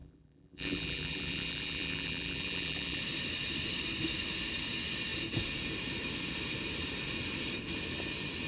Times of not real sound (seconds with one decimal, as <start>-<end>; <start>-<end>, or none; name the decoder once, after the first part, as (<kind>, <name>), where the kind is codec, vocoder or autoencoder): 0.0-3.0 (vocoder, BigVGAN v2)